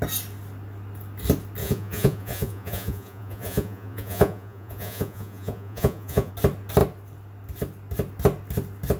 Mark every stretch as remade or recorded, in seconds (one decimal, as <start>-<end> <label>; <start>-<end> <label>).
0.0-1.6 recorded; 1.6-6.3 remade; 6.3-9.0 recorded